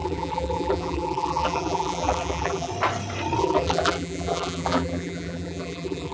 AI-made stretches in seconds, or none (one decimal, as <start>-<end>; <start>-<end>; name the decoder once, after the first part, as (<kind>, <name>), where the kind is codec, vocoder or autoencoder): 0.0-2.7 (vocoder, BigVGAN v2); 3.4-6.1